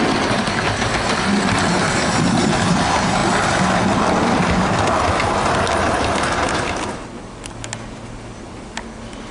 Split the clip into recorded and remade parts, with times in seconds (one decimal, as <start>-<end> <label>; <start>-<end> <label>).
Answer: 0.0-9.3 recorded